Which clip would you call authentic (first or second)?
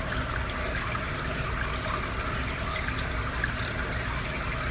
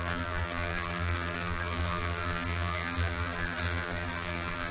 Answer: first